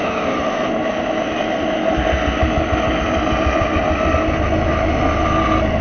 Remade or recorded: recorded